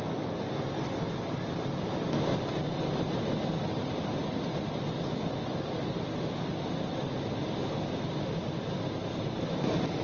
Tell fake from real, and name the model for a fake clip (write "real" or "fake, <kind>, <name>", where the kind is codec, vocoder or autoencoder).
real